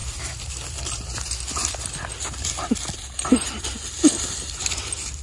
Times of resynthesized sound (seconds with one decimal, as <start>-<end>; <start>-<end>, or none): 0.0-0.8